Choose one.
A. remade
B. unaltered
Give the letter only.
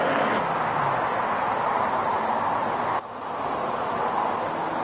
B